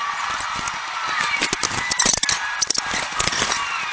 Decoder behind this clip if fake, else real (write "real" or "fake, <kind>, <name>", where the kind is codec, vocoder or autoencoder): real